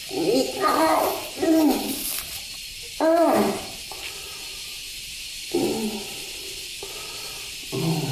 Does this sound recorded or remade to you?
remade